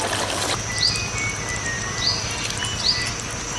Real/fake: real